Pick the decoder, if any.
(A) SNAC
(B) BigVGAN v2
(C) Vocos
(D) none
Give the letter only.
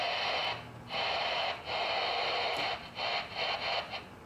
D